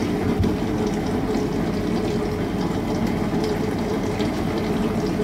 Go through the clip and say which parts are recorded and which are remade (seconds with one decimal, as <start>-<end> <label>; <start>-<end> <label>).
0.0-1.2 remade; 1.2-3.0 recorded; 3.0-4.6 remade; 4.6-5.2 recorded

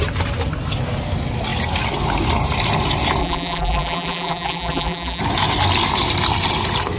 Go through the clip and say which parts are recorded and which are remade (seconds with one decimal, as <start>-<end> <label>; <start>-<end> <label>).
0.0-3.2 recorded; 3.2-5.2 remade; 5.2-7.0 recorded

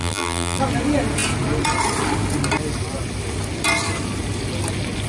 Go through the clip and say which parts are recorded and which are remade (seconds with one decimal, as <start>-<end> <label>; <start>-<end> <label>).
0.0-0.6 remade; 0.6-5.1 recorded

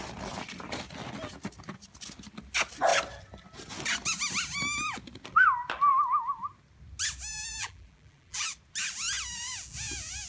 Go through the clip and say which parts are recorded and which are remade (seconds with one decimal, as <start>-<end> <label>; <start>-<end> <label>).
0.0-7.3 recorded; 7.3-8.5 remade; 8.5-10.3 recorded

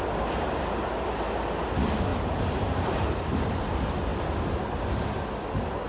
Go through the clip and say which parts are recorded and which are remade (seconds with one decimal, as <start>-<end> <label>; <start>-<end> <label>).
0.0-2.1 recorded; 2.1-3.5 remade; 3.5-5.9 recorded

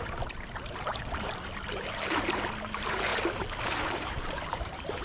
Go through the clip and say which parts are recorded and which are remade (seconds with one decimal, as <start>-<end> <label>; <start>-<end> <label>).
0.0-3.1 remade; 3.1-3.8 recorded; 3.8-5.0 remade